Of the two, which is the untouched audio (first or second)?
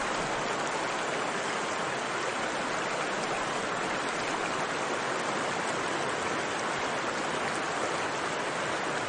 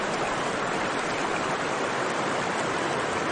first